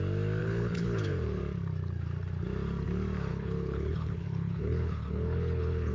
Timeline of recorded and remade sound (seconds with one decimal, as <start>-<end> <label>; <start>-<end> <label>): 0.0-0.4 recorded; 0.4-1.4 remade; 1.4-3.3 recorded; 3.3-5.9 remade